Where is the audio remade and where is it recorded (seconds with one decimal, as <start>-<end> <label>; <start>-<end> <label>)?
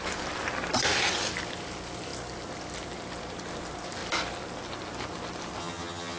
0.0-5.6 recorded; 5.6-6.2 remade